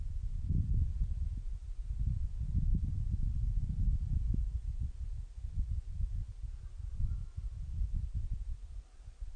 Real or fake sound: real